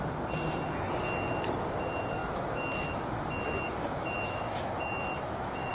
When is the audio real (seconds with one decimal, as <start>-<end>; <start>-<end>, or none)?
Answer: 0.0-2.2